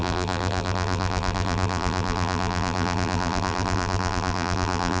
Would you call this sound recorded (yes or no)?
no